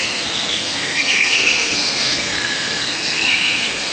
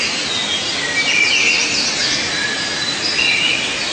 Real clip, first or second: second